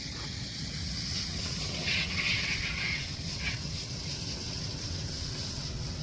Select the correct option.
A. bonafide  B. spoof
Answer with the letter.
B